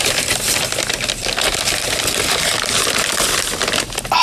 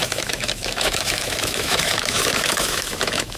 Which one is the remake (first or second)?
second